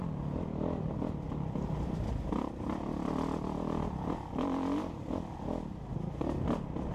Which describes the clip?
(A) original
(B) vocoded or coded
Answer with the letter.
A